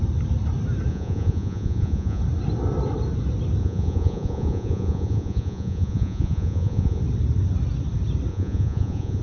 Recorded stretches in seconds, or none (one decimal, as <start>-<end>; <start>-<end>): 0.0-0.9; 2.2-3.6; 7.0-8.3